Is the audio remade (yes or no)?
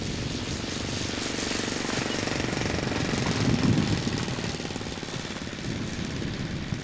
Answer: no